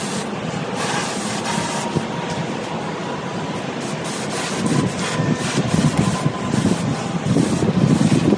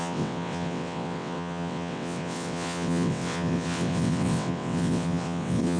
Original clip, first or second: first